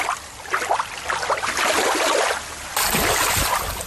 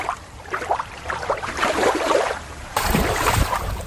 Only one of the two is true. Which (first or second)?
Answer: first